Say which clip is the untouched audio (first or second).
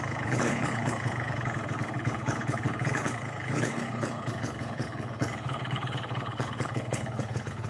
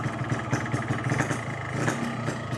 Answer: second